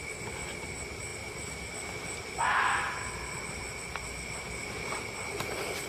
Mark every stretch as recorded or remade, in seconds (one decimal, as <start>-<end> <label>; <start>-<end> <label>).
0.0-5.9 recorded